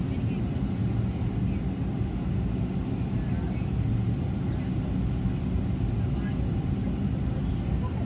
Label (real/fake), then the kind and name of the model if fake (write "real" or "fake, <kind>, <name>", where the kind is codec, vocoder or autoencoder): real